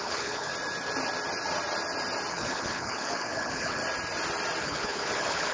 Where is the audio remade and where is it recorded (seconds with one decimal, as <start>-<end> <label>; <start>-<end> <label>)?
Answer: 0.0-0.5 remade; 0.5-2.3 recorded; 2.3-3.8 remade; 3.8-4.6 recorded; 4.6-5.5 remade

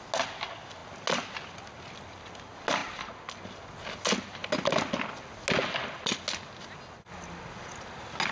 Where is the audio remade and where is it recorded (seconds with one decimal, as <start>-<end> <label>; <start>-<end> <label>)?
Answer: 0.0-8.3 recorded